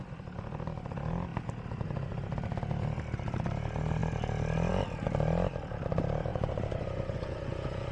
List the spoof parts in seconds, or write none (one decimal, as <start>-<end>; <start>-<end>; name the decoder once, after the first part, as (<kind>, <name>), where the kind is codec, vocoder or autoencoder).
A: 6.3-7.9 (vocoder, Vocos)